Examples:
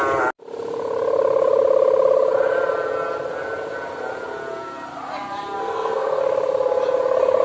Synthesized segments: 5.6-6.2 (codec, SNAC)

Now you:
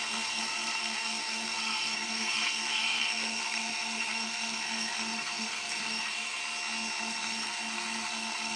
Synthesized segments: 0.0-6.4 (codec, SNAC); 7.0-8.6

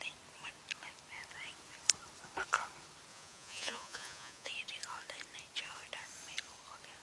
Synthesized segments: 3.1-4.5 (vocoder, Vocos)

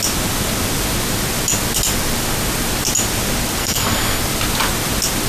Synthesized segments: 3.6-4.2 (codec, SNAC)

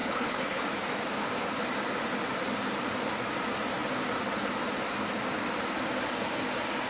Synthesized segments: 0.0-0.6 (codec, HILCodec)

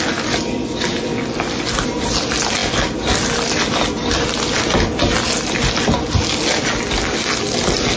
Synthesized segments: none

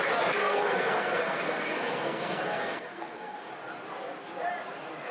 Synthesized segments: 0.4-3.5 (codec, SNAC)

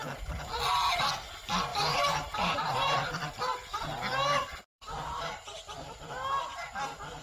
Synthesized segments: 1.7-3.1 (vocoder, BigVGAN v2); 4.7-6.0